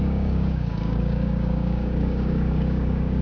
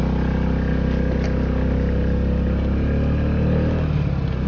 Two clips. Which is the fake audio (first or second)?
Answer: first